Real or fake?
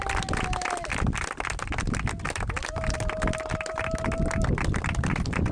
real